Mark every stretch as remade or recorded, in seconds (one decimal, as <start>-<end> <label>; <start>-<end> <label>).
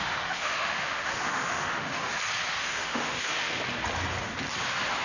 0.0-2.2 remade; 2.2-2.6 recorded; 2.6-3.6 remade; 3.6-5.0 recorded